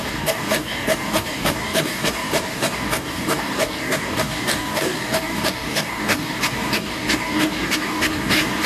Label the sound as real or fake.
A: fake